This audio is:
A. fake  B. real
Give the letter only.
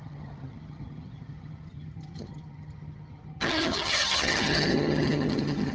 A